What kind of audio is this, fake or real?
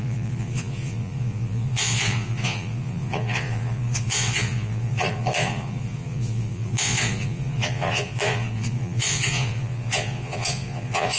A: fake